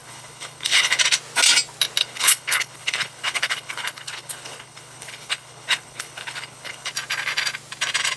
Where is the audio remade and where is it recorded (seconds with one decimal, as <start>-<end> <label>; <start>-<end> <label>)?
0.0-1.0 remade; 1.0-2.0 recorded; 2.0-6.9 remade; 6.9-8.2 recorded